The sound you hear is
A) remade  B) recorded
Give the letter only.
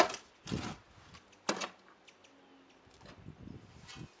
B